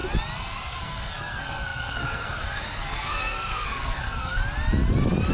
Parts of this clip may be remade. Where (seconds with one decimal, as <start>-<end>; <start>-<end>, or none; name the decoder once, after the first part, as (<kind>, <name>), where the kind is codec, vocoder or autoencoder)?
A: 0.5-4.4 (codec, SNAC)